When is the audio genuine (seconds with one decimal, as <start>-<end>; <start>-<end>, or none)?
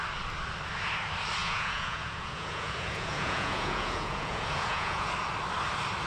0.0-1.4; 5.1-6.1